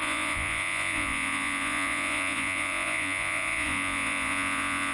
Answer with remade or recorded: remade